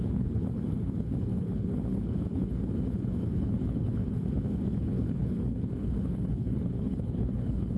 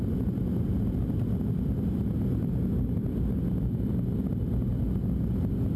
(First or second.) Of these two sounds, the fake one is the first